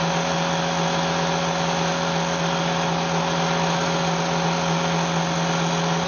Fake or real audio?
real